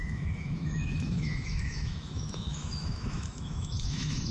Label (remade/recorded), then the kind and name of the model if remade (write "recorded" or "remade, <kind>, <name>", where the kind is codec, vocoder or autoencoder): remade, autoencoder, DAC-VAE